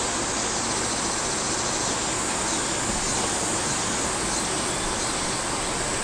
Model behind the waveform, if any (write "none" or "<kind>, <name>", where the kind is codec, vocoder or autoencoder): none